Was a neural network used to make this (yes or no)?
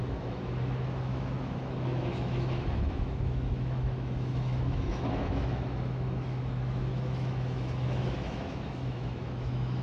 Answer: yes